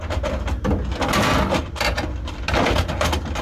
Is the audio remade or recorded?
recorded